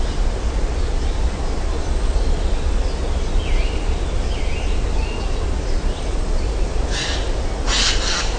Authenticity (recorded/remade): recorded